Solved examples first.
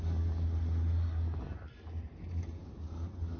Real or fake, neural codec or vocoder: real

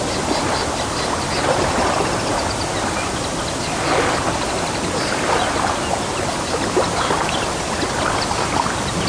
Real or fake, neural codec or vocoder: real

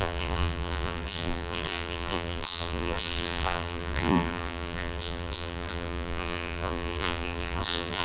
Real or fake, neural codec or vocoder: fake, vocoder, BigVGAN v2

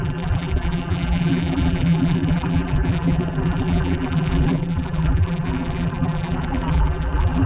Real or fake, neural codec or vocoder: fake, vocoder, BigVGAN v2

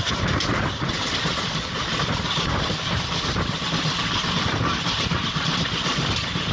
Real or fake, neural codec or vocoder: fake, vocoder, BigVGAN v2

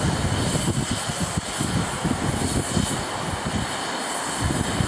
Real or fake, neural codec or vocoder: real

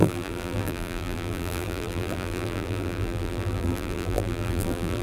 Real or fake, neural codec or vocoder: fake, vocoder, BigVGAN v2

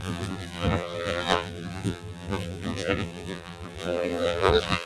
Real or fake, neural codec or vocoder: fake, vocoder, BigVGAN v2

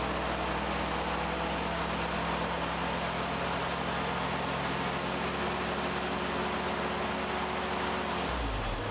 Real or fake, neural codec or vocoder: real